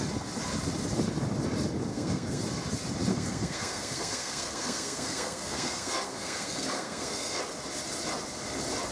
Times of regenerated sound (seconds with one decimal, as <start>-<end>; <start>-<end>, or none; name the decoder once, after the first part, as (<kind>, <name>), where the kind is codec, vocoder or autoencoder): 1.9-2.4 (codec, SNAC); 3.1-7.4